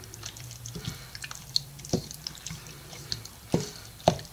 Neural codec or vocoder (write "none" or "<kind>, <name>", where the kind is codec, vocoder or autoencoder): vocoder, BigVGAN v2